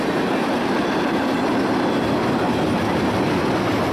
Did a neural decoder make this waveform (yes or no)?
no